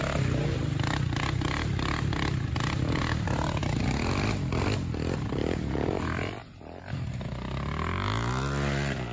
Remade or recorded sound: recorded